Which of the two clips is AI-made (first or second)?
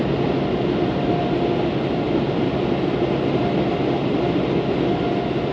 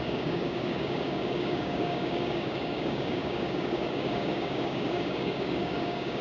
second